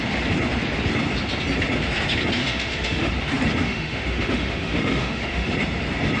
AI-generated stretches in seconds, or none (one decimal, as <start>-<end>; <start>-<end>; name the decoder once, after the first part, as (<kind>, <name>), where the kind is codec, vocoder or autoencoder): 2.4-3.1 (autoencoder, DAC-VAE); 3.6-5.5